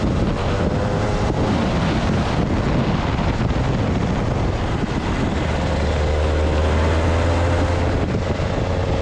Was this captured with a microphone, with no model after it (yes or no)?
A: yes